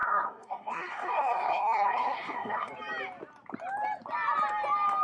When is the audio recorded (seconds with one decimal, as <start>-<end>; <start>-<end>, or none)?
2.7-5.0